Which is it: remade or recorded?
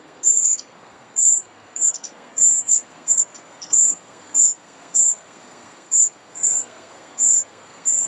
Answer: remade